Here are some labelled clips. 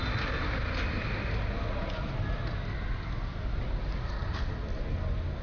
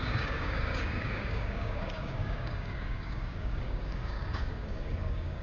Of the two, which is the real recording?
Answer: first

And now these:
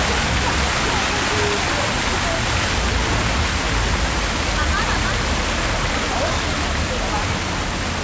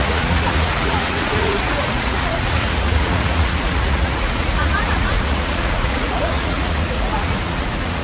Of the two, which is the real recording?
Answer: first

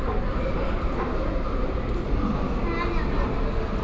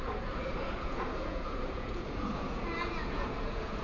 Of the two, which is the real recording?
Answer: first